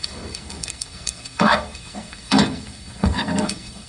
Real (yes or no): no